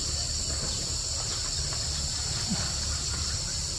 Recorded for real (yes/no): yes